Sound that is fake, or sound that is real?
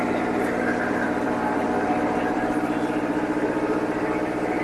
fake